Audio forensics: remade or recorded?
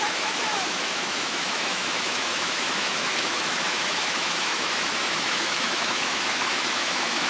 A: remade